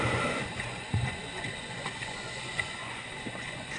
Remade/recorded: remade